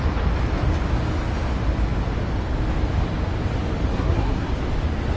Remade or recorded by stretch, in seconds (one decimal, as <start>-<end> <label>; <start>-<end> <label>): 0.0-3.9 recorded; 3.9-4.5 remade; 4.5-5.2 recorded